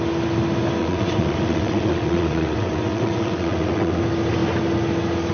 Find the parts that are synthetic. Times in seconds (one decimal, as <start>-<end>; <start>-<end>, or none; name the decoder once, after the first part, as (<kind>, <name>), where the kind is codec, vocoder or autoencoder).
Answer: 0.8-4.0 (vocoder, WaveNeXt)